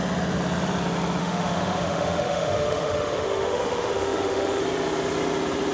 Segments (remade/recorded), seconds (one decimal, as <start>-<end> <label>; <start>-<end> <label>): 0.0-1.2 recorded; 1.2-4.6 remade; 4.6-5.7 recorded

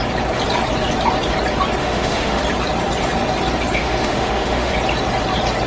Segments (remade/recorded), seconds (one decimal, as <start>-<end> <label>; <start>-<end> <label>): 0.0-1.8 recorded; 1.8-2.4 remade; 2.4-3.8 recorded; 3.8-4.7 remade; 4.7-5.7 recorded

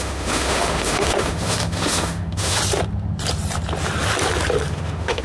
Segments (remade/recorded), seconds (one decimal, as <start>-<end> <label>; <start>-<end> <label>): 0.0-2.6 remade; 2.6-4.7 recorded; 4.7-5.2 remade